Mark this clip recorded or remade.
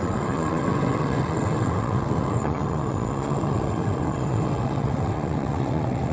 remade